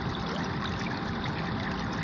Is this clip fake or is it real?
real